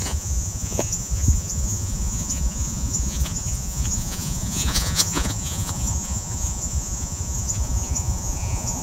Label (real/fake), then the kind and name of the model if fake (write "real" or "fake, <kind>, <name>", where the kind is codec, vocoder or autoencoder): fake, vocoder, Vocos